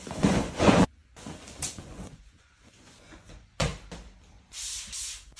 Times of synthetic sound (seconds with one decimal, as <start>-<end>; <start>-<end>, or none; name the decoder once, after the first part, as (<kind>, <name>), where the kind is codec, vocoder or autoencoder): 0.0-3.7 (vocoder, Vocos); 5.0-5.4